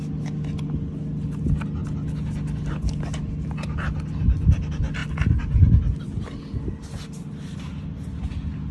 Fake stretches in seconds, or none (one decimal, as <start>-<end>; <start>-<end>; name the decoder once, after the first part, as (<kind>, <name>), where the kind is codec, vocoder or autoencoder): none

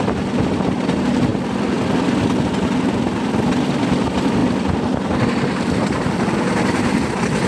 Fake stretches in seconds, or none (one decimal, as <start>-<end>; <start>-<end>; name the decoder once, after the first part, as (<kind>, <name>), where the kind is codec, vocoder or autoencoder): none

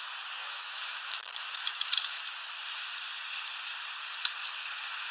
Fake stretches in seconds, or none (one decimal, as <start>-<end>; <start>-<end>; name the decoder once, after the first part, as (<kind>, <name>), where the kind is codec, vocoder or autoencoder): 0.4-2.2 (autoencoder, DAC-VAE)

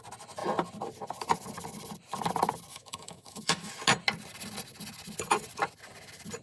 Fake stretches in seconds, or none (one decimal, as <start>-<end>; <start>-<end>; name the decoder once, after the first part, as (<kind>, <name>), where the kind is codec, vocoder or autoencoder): 2.7-3.7 (autoencoder, DAC-VAE)

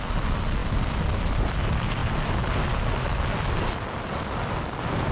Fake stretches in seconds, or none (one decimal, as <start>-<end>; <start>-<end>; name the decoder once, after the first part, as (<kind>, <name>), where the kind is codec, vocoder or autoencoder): none

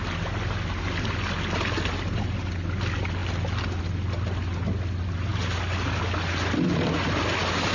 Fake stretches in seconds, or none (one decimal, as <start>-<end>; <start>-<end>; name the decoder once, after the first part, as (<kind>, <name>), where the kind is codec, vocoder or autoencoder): none

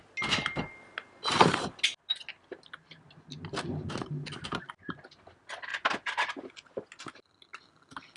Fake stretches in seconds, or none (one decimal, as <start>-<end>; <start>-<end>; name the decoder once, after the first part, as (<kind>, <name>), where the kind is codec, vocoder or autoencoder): none

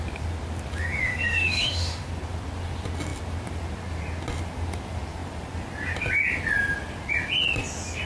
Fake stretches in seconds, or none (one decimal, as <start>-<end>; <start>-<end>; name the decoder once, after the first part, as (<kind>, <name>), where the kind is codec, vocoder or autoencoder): 0.8-2.1 (autoencoder, DAC-VAE)